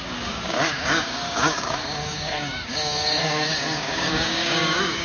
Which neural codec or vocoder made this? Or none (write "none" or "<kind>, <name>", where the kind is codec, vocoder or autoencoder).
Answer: codec, DAC